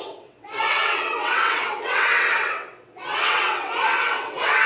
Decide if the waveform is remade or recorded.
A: remade